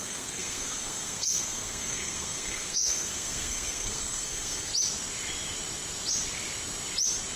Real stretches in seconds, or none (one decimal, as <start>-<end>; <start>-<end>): 4.7-7.4

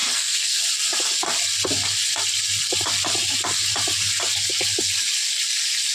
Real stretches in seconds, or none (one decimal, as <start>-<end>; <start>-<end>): 0.6-5.9